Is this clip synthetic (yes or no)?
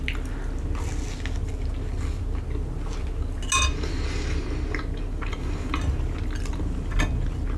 no